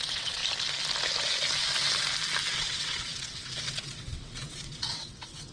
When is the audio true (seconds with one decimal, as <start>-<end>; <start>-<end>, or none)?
0.4-2.5